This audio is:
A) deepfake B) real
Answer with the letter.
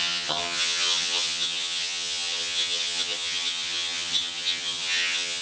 A